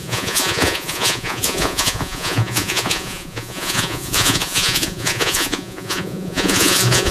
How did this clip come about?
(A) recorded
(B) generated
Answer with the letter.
B